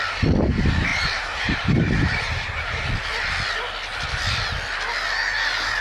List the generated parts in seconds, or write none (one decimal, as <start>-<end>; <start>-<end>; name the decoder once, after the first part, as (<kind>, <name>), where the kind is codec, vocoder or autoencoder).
0.9-2.8 (vocoder, BigVGAN v2)